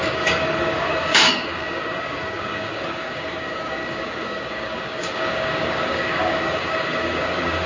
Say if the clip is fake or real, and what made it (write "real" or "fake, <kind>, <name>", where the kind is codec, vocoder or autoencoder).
fake, codec, DAC